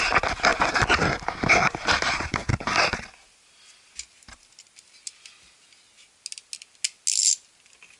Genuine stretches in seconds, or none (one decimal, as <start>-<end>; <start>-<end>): 0.0-8.0